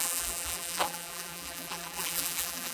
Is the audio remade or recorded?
remade